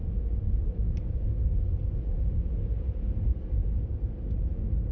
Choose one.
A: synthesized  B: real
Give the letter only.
B